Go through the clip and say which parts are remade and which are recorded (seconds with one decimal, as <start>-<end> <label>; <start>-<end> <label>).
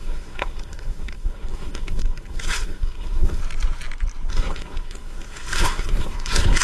0.0-3.4 remade; 3.4-4.3 recorded; 4.3-6.6 remade